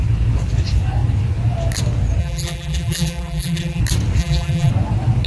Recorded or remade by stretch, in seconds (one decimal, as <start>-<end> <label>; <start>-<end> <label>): 0.0-2.2 recorded; 2.2-3.8 remade; 3.8-4.2 recorded; 4.2-4.7 remade; 4.7-5.3 recorded